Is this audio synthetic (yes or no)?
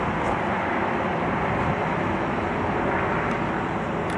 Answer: no